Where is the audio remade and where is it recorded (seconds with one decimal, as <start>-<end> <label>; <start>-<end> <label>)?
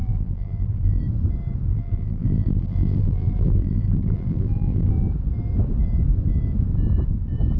0.0-1.0 remade; 1.0-1.7 recorded; 1.7-4.9 remade; 4.9-7.6 recorded